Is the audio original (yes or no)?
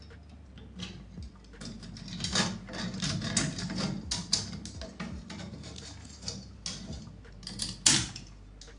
yes